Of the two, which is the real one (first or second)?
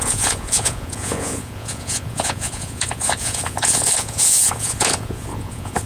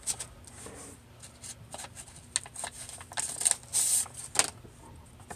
second